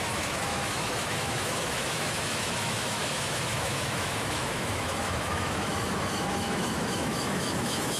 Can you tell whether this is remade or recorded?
remade